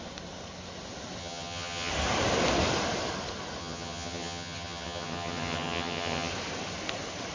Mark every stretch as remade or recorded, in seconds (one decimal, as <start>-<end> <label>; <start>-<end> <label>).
0.0-1.2 recorded; 1.2-1.9 remade; 1.9-3.6 recorded; 3.6-6.3 remade; 6.3-7.3 recorded